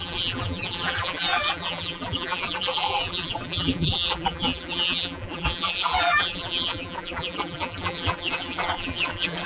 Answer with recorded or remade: remade